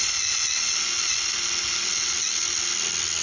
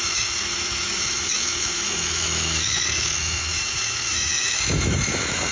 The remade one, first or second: second